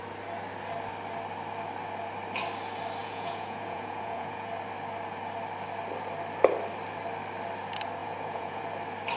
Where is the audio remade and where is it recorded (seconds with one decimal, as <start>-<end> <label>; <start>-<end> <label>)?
0.0-3.0 recorded; 3.0-4.5 remade; 4.5-8.0 recorded; 8.0-8.6 remade; 8.6-9.2 recorded